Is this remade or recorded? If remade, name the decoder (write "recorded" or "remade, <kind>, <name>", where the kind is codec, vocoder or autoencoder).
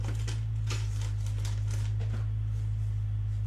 recorded